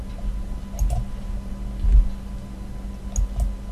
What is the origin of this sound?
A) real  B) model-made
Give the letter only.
A